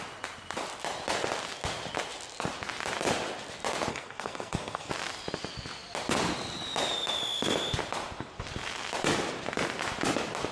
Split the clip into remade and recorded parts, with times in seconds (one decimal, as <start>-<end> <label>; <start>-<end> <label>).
0.0-3.9 recorded; 3.9-4.9 remade; 4.9-10.5 recorded